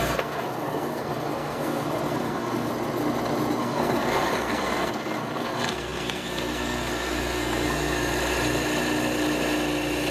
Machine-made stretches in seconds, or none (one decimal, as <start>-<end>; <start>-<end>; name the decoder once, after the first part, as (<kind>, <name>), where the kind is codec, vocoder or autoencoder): 0.0-2.7 (codec, SNAC); 3.6-8.1